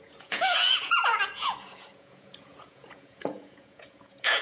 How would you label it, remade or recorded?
remade